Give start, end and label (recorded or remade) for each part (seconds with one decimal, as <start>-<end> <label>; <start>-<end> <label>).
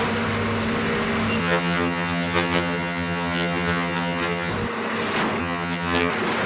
0.0-1.4 recorded; 1.4-4.5 remade; 4.5-5.4 recorded; 5.4-6.1 remade; 6.1-6.5 recorded